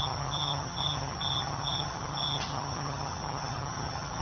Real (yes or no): no